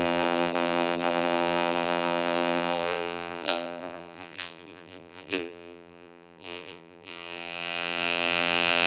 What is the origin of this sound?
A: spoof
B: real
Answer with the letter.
A